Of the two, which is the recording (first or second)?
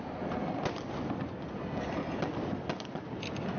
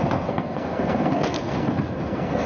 first